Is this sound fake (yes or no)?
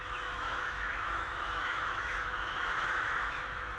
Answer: yes